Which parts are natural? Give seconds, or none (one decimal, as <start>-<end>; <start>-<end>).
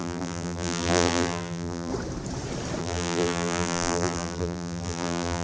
1.9-2.8